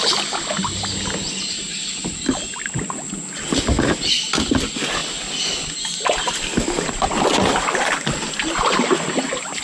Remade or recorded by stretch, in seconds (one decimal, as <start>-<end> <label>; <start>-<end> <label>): 0.0-9.6 recorded

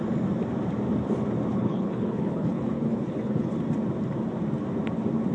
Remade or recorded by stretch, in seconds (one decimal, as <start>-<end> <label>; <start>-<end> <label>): 0.0-1.5 recorded; 1.5-3.5 remade; 3.5-5.3 recorded

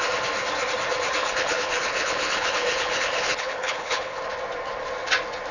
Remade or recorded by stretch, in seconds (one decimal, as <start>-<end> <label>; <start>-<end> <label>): 0.0-1.2 recorded; 1.2-4.2 remade; 4.2-5.5 recorded